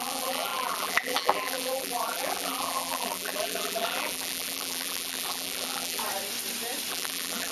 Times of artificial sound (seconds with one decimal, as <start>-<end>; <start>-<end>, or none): 0.0-6.0; 6.9-7.5